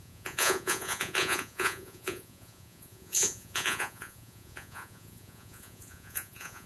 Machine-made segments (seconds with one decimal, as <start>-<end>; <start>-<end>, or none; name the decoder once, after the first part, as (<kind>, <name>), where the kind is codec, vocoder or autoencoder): 0.0-6.7 (vocoder, Vocos)